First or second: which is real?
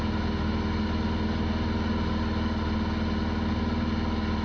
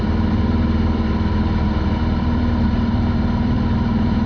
first